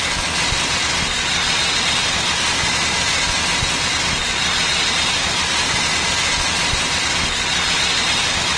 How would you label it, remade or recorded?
recorded